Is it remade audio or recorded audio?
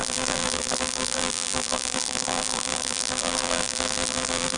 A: remade